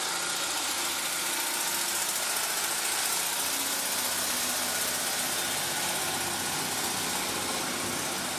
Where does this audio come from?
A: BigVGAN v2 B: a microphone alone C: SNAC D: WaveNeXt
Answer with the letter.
B